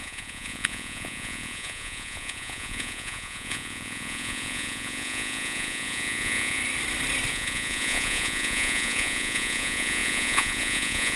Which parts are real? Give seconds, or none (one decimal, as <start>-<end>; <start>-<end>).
6.6-7.3